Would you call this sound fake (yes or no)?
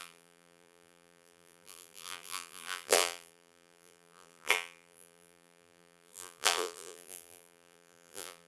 yes